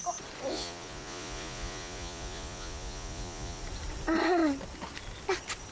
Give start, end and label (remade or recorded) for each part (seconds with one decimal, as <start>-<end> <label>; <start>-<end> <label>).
0.0-0.5 recorded; 0.5-3.6 remade; 3.6-5.7 recorded